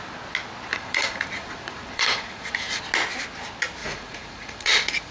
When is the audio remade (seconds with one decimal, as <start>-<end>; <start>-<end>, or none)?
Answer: 0.7-2.8; 3.8-5.1